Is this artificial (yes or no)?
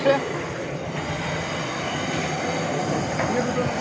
no